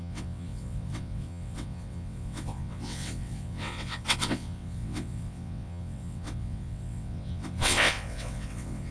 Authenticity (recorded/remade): remade